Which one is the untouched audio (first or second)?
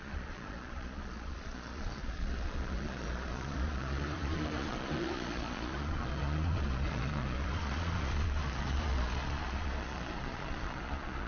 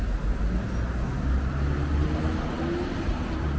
second